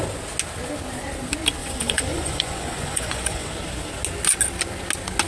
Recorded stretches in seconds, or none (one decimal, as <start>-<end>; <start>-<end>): 0.0-1.6; 3.5-5.3